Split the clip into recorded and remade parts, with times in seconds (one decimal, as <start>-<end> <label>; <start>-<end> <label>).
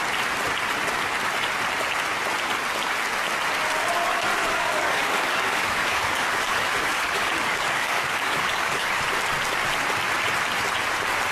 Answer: 0.0-4.4 recorded; 4.4-9.0 remade; 9.0-11.3 recorded